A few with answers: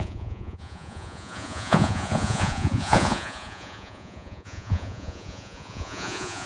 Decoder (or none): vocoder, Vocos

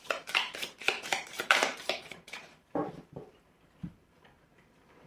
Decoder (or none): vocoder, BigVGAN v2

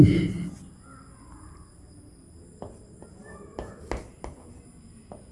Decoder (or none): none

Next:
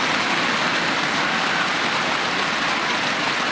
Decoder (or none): none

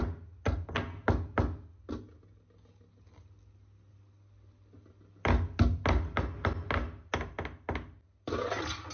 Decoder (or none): none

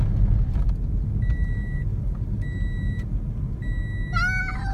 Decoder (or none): none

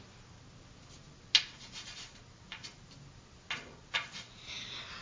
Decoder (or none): none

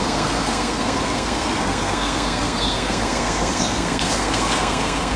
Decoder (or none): codec, SNAC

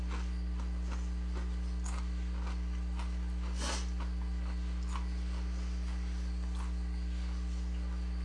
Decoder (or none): none